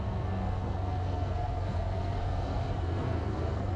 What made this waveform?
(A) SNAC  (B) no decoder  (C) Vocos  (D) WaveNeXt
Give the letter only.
A